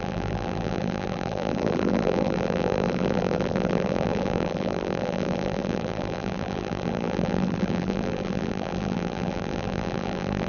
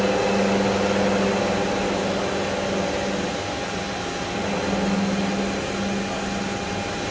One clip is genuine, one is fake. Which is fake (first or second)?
first